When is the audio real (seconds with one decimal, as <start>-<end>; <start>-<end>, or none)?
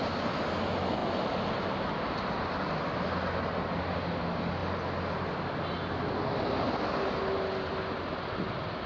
0.0-8.9